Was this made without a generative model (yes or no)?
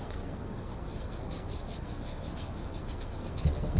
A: no